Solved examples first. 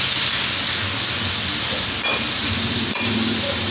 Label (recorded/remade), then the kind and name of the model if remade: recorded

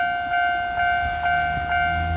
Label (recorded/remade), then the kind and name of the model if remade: recorded